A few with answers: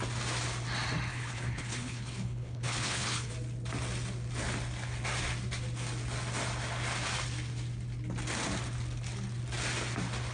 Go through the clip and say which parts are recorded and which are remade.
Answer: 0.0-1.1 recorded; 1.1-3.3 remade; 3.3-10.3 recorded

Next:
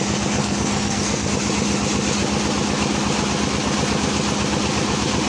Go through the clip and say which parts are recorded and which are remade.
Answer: 0.0-0.4 recorded; 0.4-1.3 remade; 1.3-5.3 recorded

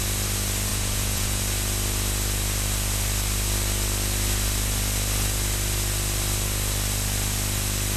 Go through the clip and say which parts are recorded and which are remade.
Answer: 0.0-0.7 recorded; 0.7-1.4 remade; 1.4-8.0 recorded

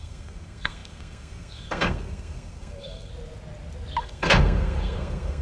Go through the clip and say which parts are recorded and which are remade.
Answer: 0.0-3.1 remade; 3.1-4.0 recorded; 4.0-5.4 remade

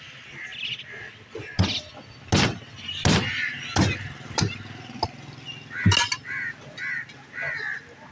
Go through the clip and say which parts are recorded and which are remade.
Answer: 0.0-8.1 recorded

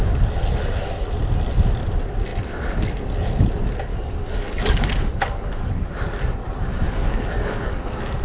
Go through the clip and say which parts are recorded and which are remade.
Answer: 0.0-3.9 recorded; 3.9-5.7 remade; 5.7-6.7 recorded; 6.7-8.2 remade